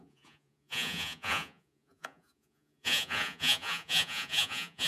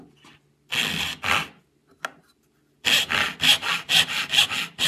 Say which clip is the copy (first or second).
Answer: first